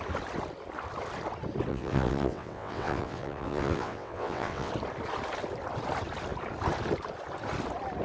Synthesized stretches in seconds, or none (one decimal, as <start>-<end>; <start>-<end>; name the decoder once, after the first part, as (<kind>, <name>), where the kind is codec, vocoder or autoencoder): 1.7-4.7 (vocoder, WaveNeXt)